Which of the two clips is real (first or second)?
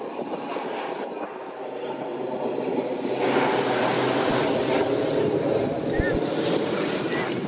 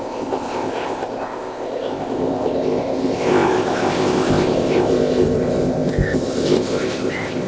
first